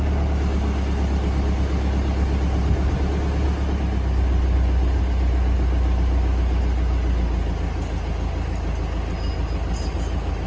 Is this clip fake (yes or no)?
no